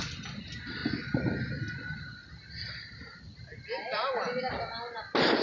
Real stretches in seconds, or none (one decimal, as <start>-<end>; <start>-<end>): 0.0-5.4